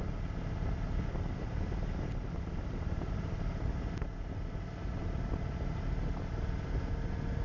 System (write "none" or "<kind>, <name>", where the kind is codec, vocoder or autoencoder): none